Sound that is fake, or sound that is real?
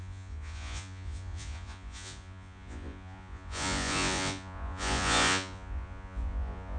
fake